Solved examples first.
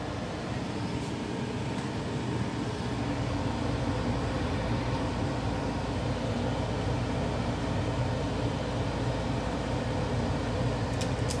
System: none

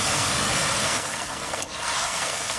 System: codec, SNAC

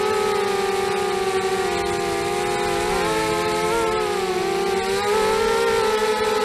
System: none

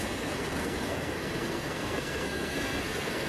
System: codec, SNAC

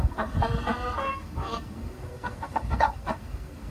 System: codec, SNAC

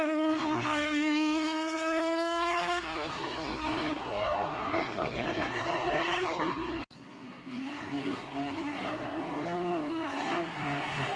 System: codec, SNAC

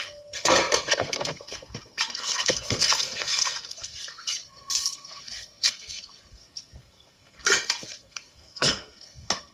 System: codec, SNAC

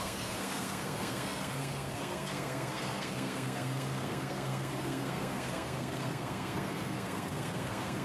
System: codec, SNAC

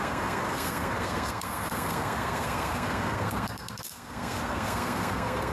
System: codec, SNAC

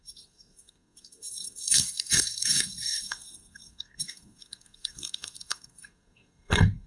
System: codec, SNAC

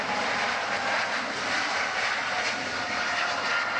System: none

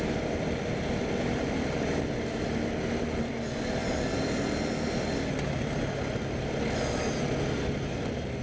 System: none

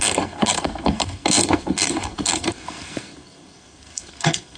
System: codec, SNAC